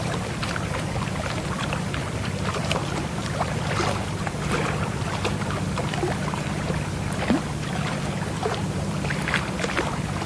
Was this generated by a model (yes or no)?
yes